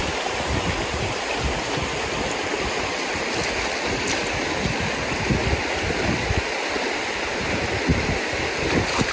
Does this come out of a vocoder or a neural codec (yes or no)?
no